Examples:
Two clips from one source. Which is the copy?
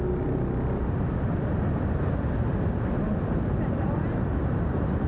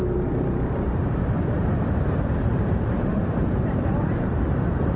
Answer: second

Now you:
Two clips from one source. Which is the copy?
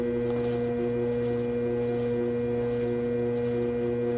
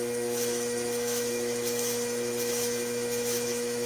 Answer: second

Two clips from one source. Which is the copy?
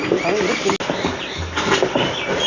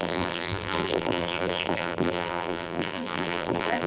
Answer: second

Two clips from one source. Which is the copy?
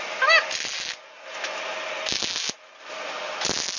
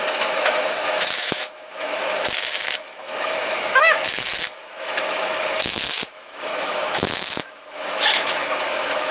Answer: second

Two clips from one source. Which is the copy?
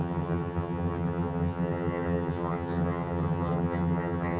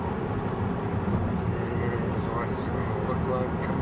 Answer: first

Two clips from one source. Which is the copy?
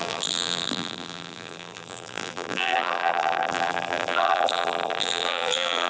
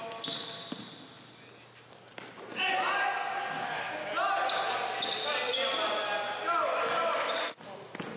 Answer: first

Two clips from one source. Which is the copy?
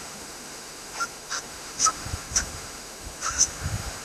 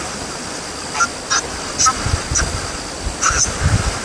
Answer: first